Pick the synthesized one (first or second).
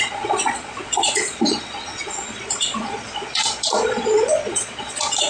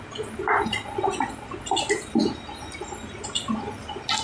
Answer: first